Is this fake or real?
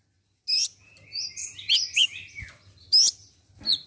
real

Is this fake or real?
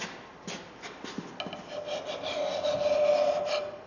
real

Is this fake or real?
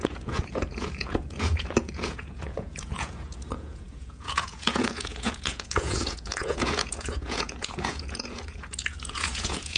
fake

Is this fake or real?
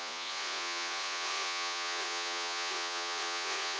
fake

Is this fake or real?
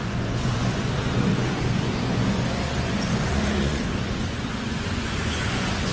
fake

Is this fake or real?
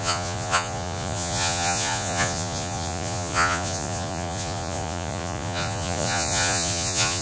fake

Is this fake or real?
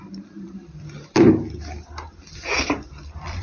real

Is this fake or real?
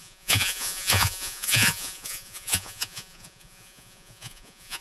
fake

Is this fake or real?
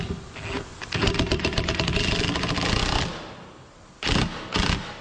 real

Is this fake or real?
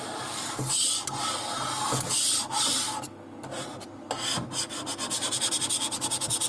real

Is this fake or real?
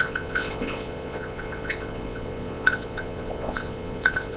fake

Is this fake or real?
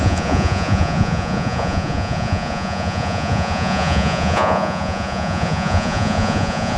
fake